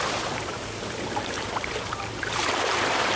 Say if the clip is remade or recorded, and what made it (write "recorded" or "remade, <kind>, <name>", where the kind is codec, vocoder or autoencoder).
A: remade, vocoder, BigVGAN v2